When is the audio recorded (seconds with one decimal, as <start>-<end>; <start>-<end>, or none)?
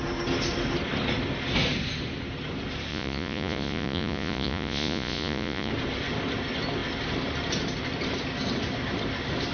0.0-2.9; 5.7-9.5